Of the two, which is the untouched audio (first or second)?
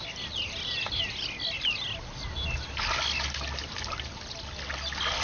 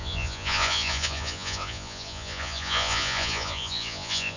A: first